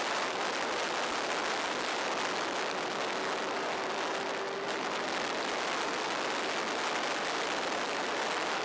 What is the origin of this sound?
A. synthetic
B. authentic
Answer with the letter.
B